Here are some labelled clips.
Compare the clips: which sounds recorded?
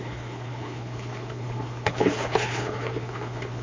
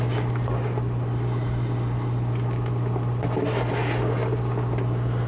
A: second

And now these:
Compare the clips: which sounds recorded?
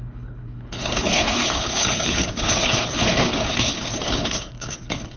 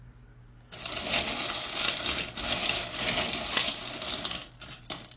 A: second